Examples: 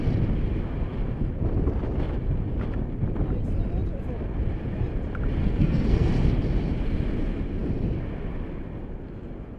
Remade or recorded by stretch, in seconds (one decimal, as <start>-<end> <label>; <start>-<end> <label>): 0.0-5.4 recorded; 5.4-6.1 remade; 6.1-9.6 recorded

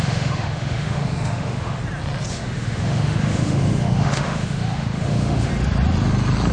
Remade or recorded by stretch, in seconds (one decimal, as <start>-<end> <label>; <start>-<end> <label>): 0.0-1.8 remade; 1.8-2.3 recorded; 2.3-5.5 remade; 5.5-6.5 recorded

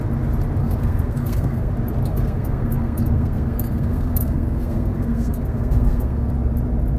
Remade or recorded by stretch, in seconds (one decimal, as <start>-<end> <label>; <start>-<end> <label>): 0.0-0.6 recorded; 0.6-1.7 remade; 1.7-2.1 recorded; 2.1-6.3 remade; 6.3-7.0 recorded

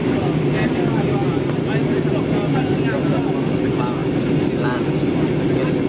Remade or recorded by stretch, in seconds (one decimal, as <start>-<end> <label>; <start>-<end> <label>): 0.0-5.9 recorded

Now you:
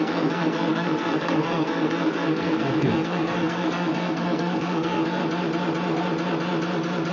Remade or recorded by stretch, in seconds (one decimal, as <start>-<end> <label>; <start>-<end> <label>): 0.0-5.2 remade; 5.2-7.1 recorded

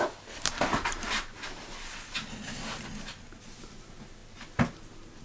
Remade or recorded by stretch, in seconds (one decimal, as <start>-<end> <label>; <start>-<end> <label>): 0.0-0.7 recorded; 0.7-1.2 remade; 1.2-5.2 recorded